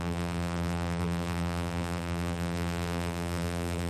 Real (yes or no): no